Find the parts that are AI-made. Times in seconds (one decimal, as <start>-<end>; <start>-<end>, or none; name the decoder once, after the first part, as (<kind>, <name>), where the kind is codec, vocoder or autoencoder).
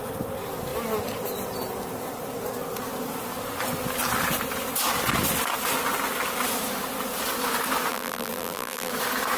7.9-8.9 (vocoder, BigVGAN v2)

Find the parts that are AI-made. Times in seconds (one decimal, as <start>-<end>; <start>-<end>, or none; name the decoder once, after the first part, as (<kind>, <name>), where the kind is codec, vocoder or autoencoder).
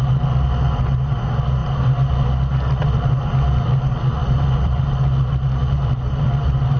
4.2-4.8 (vocoder, BigVGAN v2)